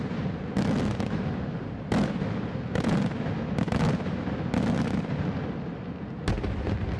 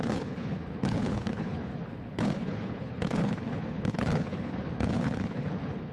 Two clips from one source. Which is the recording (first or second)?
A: first